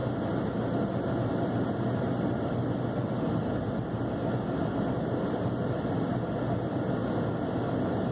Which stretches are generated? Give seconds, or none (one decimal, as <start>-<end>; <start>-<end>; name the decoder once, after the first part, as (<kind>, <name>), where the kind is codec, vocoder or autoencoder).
none